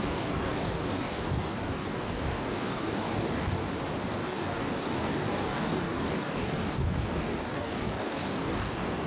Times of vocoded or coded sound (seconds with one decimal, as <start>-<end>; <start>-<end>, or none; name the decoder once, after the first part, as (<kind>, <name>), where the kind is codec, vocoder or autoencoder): 0.0-3.6 (codec, DAC); 4.1-9.1